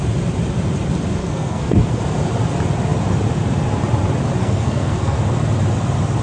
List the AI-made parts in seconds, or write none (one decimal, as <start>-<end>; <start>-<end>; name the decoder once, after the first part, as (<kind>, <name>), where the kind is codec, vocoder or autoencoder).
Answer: 1.2-2.0 (codec, SNAC); 4.4-5.2